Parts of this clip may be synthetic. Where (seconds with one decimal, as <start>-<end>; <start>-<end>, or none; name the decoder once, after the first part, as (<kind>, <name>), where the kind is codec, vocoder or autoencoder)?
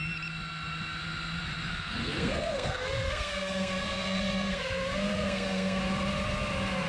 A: 1.7-5.8 (codec, SNAC)